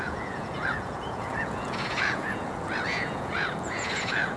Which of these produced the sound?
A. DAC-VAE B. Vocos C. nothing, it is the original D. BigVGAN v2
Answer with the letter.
B